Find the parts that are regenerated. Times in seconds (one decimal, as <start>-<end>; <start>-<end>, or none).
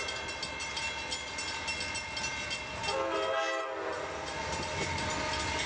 none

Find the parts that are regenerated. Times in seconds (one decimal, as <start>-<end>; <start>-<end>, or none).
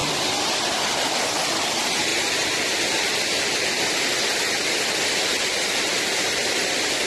5.3-7.1